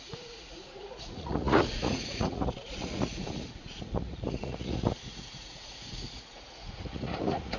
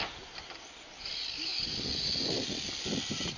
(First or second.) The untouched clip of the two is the second